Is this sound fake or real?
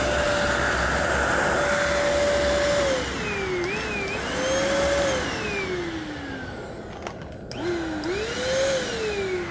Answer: real